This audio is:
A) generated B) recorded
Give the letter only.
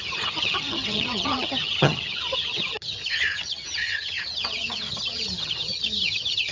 A